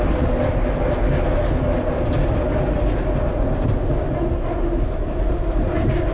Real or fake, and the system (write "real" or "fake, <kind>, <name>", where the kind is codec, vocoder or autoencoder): real